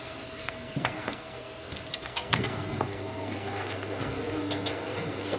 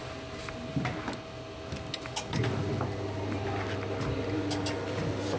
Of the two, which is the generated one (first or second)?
first